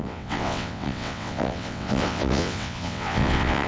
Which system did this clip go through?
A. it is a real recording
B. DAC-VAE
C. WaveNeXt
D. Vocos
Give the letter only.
C